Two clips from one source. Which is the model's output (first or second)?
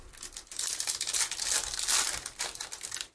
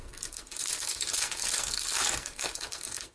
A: second